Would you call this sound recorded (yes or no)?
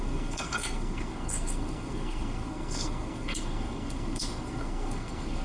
no